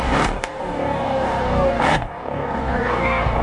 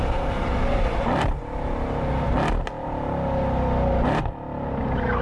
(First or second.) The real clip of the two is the second